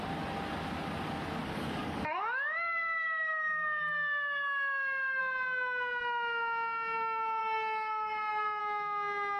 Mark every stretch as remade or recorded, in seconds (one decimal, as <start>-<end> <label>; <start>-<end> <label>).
0.0-1.4 recorded; 1.4-5.2 remade; 5.2-7.4 recorded; 7.4-8.6 remade; 8.6-9.4 recorded

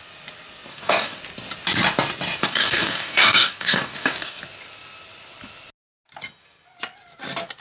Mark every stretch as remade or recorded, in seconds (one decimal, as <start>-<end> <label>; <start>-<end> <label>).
0.0-0.7 recorded; 0.7-1.2 remade; 1.2-2.4 recorded; 2.4-4.4 remade; 4.4-7.6 recorded

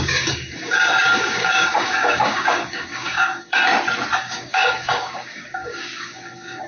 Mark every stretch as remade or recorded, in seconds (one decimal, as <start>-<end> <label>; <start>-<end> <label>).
0.0-3.6 remade; 3.6-4.2 recorded; 4.2-6.7 remade

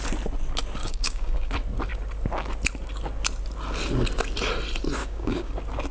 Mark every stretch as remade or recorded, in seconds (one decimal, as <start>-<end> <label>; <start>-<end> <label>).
0.0-0.8 recorded; 0.8-1.5 remade; 1.5-5.0 recorded; 5.0-5.5 remade; 5.5-5.9 recorded

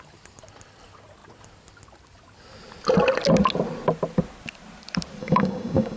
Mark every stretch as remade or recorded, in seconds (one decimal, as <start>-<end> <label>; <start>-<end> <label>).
0.0-5.2 recorded; 5.2-6.0 remade

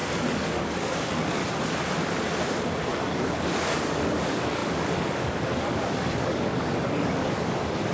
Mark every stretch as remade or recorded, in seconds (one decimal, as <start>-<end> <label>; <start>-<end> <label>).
0.0-1.4 remade; 1.4-2.8 recorded; 2.8-7.9 remade

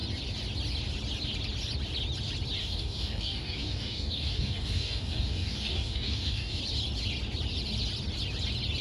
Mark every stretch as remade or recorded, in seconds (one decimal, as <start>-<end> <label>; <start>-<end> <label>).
0.0-2.6 recorded; 2.6-6.6 remade; 6.6-8.8 recorded

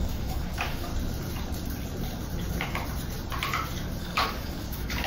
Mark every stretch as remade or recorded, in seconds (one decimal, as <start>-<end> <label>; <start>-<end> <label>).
0.0-0.9 remade; 0.9-4.0 recorded; 4.0-5.1 remade